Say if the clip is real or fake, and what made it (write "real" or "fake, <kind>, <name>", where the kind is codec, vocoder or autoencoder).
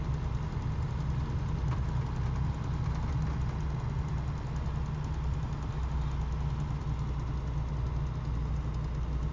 real